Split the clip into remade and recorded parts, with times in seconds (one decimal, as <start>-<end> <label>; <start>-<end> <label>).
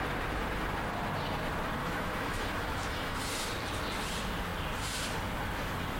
0.0-1.8 recorded; 1.8-3.2 remade; 3.2-6.0 recorded